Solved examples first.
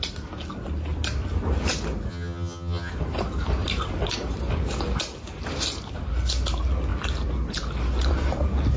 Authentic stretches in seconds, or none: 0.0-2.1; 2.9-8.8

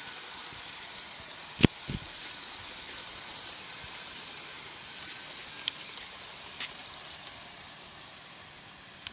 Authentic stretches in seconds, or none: 0.0-0.4; 1.4-6.8; 8.1-9.1

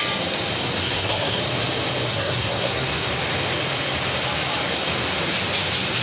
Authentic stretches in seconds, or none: 0.0-0.8; 1.4-2.1; 3.1-6.0

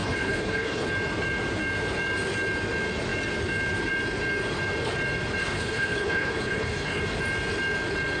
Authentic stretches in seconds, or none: 0.9-5.4; 7.0-8.2